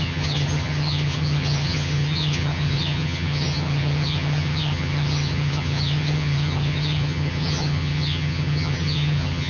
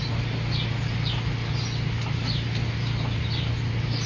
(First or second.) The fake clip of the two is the first